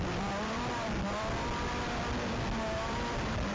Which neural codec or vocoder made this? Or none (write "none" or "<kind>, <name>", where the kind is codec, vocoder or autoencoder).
vocoder, BigVGAN v2